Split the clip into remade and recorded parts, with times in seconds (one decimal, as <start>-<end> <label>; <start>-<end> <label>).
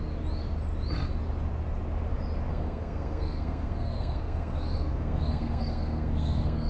0.0-2.5 recorded; 2.5-6.7 remade